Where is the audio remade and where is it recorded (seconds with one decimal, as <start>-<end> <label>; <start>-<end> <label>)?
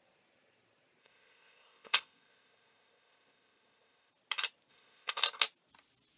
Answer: 0.0-1.0 recorded; 1.0-4.1 remade; 4.1-4.7 recorded; 4.7-5.2 remade; 5.2-6.2 recorded